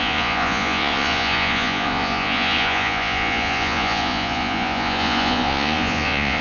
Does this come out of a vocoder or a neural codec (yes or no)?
yes